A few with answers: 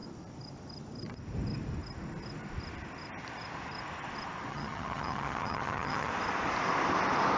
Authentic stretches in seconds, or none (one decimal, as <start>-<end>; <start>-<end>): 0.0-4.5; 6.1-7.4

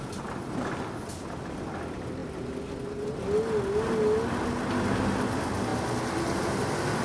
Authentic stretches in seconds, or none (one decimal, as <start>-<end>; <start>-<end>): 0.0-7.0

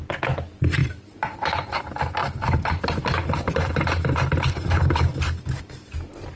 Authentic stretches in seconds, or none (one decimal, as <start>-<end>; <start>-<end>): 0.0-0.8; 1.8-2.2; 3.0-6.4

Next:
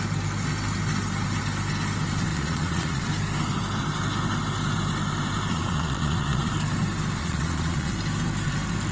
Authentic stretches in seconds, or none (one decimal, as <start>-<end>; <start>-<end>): 0.0-2.3; 3.0-5.5; 6.5-7.2; 7.9-8.9

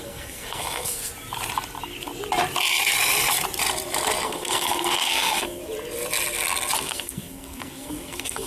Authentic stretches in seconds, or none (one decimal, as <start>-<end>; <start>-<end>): 1.1-4.2; 5.6-6.8